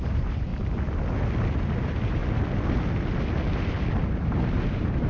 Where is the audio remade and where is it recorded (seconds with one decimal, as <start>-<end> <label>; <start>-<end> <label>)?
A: 0.0-0.5 remade; 0.5-1.8 recorded; 1.8-2.2 remade; 2.2-4.1 recorded; 4.1-5.1 remade

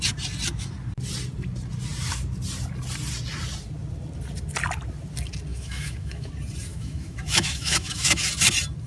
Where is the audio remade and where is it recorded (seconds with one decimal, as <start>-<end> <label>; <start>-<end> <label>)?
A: 0.0-5.5 recorded; 5.5-6.3 remade; 6.3-6.7 recorded; 6.7-8.3 remade; 8.3-8.9 recorded

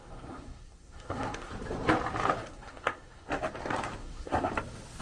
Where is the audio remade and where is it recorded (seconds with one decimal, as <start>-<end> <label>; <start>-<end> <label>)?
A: 0.0-1.5 remade; 1.5-2.4 recorded; 2.4-3.3 remade; 3.3-4.0 recorded; 4.0-4.5 remade; 4.5-5.0 recorded